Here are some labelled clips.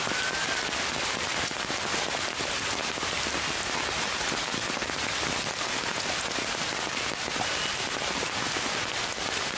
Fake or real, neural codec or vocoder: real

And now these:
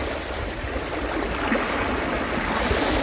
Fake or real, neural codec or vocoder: real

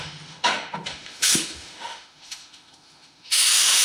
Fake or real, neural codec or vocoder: fake, autoencoder, DAC-VAE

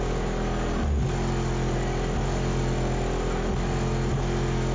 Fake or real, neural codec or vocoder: real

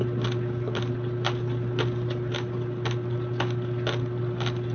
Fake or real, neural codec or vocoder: real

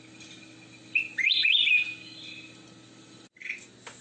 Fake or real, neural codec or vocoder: real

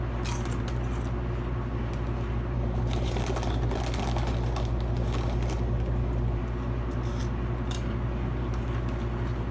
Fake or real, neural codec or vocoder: real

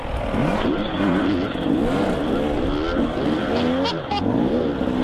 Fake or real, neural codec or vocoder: real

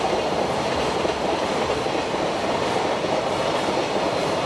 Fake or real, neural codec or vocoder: real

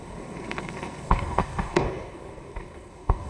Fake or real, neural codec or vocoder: fake, codec, SNAC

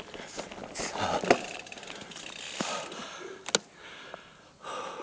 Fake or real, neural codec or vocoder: real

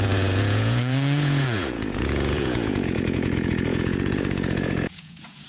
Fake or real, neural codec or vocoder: fake, vocoder, Vocos